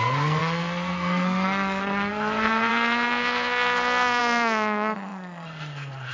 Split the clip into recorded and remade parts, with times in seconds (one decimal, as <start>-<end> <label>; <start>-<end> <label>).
0.0-6.1 remade